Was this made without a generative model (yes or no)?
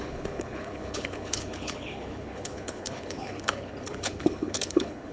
no